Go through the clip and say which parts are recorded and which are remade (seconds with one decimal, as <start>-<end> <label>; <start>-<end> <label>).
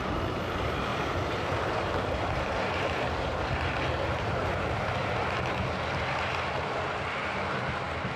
0.0-0.9 recorded; 0.9-4.8 remade; 4.8-8.2 recorded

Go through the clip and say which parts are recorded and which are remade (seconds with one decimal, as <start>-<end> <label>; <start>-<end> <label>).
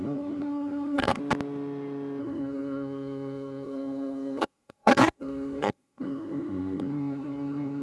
0.0-1.2 remade; 1.2-2.2 recorded; 2.2-7.8 remade